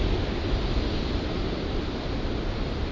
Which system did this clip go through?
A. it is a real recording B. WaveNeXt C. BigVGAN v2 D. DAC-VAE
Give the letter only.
A